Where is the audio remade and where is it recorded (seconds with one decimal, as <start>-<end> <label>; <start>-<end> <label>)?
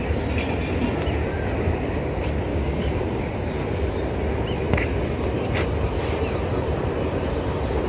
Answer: 0.0-2.5 recorded; 2.5-3.2 remade; 3.2-7.9 recorded